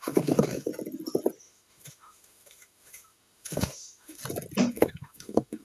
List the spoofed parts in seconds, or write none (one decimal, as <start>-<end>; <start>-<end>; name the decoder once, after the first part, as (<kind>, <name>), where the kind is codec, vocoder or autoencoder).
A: 0.0-0.7 (autoencoder, DAC-VAE); 1.4-4.2; 4.7-5.6